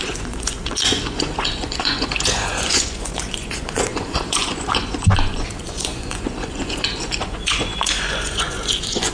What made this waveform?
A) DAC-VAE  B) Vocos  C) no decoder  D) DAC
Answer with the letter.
B